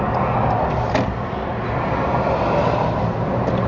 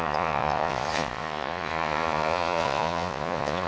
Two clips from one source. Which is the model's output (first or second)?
second